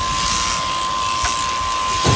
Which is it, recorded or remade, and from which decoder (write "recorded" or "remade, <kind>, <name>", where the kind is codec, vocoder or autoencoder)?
recorded